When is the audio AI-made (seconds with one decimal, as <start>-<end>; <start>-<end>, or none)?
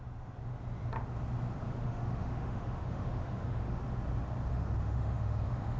0.0-0.4; 1.8-3.8; 4.5-5.8